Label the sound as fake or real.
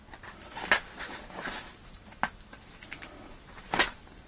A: fake